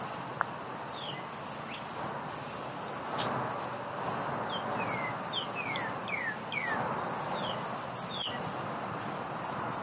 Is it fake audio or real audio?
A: real